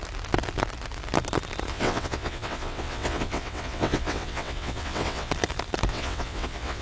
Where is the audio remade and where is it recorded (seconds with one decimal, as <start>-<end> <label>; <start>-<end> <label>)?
0.0-1.7 recorded; 1.7-5.3 remade; 5.3-5.9 recorded; 5.9-6.8 remade